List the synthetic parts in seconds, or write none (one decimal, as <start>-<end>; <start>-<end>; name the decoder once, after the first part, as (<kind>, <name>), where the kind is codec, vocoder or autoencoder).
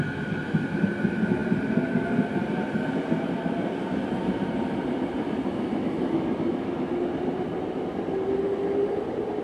none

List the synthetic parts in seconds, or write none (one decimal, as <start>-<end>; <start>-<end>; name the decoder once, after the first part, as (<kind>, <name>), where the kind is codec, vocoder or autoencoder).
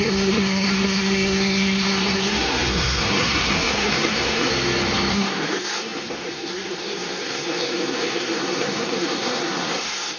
0.0-4.5 (codec, SNAC); 5.1-10.2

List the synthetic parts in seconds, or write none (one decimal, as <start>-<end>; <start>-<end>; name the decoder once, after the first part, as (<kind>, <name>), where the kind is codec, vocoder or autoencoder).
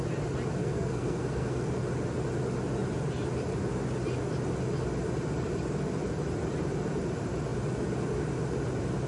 0.6-1.7 (codec, SNAC)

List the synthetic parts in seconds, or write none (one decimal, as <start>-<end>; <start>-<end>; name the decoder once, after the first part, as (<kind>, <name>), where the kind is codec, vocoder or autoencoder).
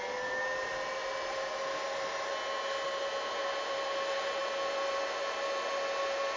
none